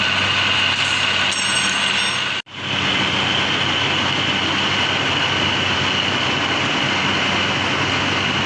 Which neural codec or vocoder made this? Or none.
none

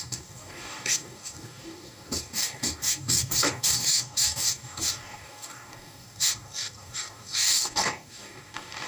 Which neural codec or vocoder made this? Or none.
codec, DAC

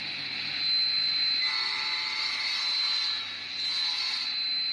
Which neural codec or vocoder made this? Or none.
none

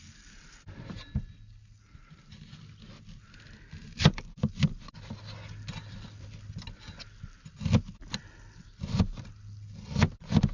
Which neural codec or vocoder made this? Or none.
none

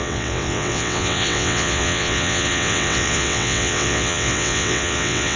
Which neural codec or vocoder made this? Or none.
vocoder, WaveNeXt